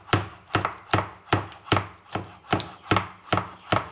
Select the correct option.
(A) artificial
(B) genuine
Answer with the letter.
B